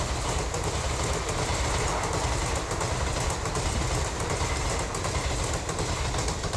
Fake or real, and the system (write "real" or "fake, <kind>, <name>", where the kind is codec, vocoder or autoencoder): real